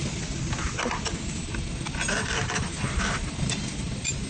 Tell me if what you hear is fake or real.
real